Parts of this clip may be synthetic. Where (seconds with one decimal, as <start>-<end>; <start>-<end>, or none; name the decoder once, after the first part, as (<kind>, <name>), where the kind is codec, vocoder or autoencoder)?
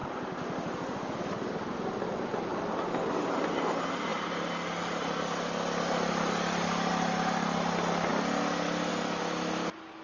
none